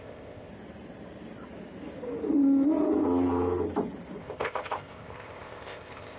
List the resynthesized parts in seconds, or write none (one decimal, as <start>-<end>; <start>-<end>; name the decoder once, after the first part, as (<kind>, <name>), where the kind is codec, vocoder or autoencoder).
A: 0.0-0.5 (codec, ZipCodec); 4.2-6.2